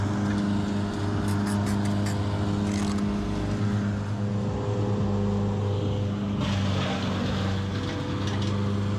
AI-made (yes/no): no